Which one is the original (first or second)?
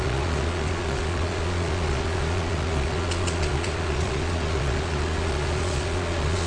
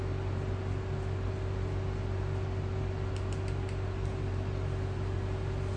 second